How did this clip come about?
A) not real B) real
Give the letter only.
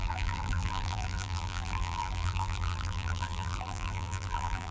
A